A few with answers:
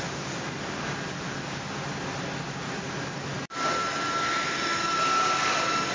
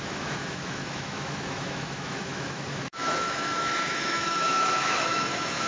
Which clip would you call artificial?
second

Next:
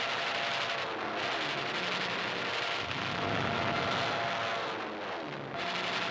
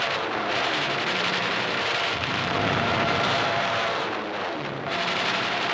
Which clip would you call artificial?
second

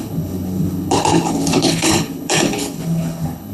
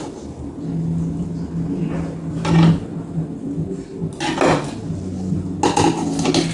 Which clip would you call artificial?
first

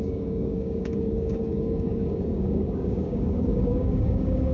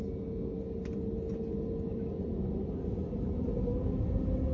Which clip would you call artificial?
first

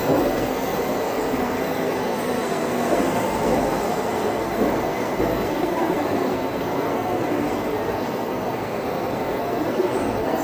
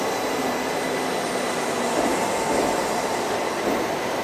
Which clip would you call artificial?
first